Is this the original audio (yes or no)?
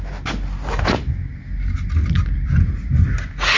yes